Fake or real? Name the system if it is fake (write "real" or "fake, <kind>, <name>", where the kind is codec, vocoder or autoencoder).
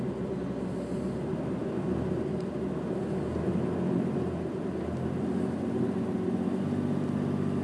real